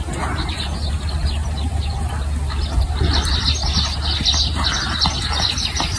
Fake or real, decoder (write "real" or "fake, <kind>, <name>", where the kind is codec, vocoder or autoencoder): real